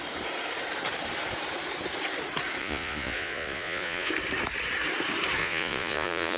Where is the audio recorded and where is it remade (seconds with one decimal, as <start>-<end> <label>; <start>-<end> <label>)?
0.0-2.6 recorded; 2.6-4.1 remade; 4.1-5.4 recorded; 5.4-6.4 remade